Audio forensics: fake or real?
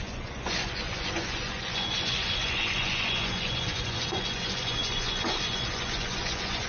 fake